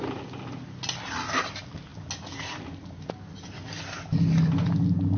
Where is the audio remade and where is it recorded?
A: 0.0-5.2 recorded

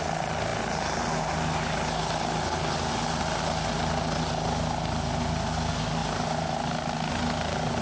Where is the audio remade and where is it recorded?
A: 0.0-7.8 recorded

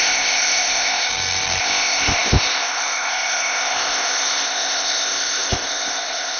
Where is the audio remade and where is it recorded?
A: 0.0-1.1 remade; 1.1-1.6 recorded; 1.6-6.4 remade

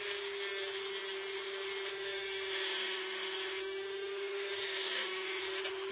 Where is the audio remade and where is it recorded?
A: 0.0-1.9 recorded; 1.9-5.4 remade; 5.4-5.9 recorded

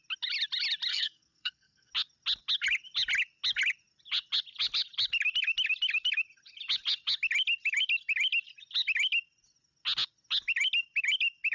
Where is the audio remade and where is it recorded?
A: 0.0-0.9 recorded; 0.9-1.9 remade; 1.9-11.5 recorded

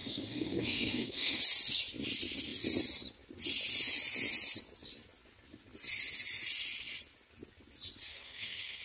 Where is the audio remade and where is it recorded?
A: 0.0-1.4 remade; 1.4-8.1 recorded; 8.1-8.8 remade

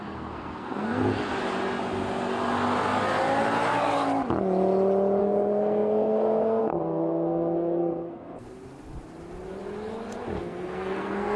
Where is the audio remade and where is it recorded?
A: 0.0-1.2 remade; 1.2-5.2 recorded; 5.2-8.6 remade; 8.6-10.4 recorded; 10.4-11.4 remade